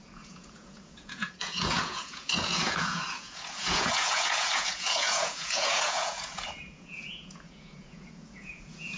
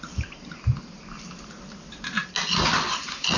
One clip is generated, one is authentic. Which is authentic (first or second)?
second